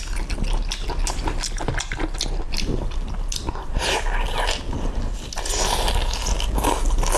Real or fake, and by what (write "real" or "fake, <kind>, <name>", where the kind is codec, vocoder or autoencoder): real